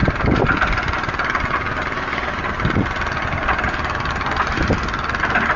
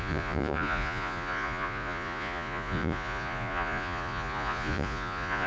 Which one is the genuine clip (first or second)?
first